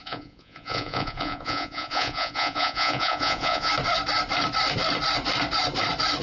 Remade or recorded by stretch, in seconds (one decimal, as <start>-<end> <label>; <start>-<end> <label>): 0.0-3.7 remade; 3.7-6.2 recorded